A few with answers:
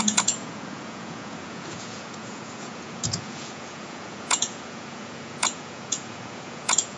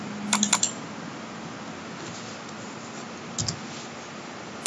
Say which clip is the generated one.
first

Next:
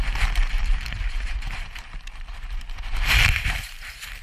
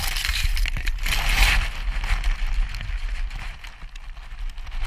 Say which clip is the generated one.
first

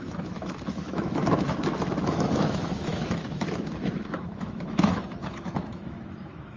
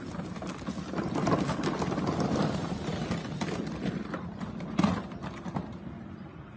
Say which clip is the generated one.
first